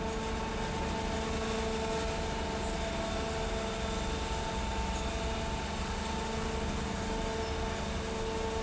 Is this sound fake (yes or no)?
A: no